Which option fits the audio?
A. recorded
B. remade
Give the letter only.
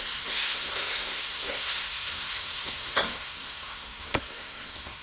B